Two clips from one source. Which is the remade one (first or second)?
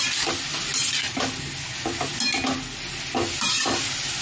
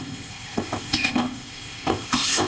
second